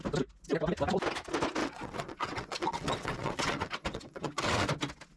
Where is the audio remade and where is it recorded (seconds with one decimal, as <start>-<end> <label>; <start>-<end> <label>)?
0.0-1.6 recorded; 1.6-4.7 remade; 4.7-5.2 recorded